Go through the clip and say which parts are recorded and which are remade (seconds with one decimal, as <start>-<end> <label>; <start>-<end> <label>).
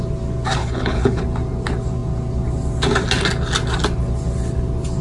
0.0-0.6 recorded; 0.6-1.2 remade; 1.2-5.0 recorded